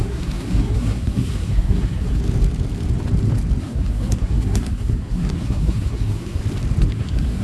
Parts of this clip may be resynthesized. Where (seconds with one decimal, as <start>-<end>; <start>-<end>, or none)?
0.0-2.2; 3.6-6.4; 6.9-7.4